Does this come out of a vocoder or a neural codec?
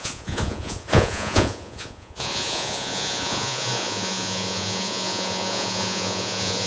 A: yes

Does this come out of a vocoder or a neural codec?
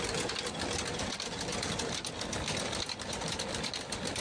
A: no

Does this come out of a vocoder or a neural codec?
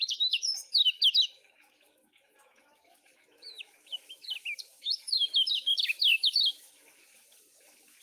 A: yes